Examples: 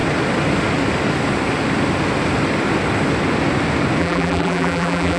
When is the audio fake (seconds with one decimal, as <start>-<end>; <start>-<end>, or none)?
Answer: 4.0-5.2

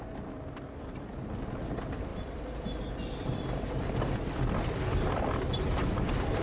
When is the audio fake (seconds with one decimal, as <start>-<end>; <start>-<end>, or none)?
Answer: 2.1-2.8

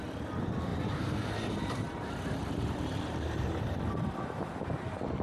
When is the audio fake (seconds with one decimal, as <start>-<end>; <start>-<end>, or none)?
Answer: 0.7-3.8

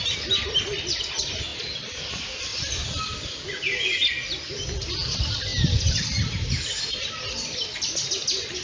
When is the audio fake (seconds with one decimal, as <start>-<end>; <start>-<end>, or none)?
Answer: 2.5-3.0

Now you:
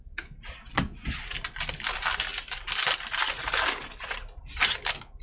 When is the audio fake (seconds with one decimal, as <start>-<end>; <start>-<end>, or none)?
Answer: 2.3-4.4

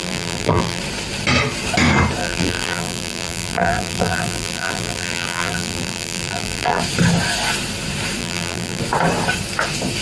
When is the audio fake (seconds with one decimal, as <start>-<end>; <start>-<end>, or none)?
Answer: 0.0-0.8; 2.2-6.8; 8.2-8.8

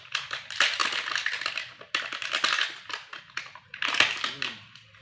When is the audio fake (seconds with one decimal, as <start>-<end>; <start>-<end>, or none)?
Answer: 0.0-0.8; 3.6-5.0

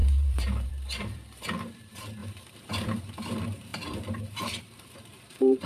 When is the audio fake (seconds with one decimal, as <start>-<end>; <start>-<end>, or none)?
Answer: 0.0-5.7